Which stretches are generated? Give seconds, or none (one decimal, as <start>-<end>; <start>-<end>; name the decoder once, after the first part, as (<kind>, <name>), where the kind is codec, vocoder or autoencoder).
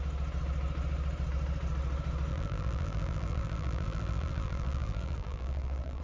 2.3-6.0 (vocoder, BigVGAN v2)